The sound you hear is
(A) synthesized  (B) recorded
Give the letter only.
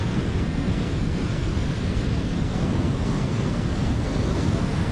A